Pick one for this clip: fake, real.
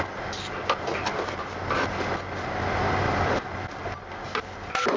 real